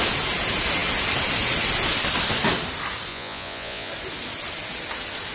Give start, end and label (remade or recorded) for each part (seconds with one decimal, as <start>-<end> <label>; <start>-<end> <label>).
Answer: 0.0-3.1 recorded; 3.1-3.9 remade; 3.9-5.3 recorded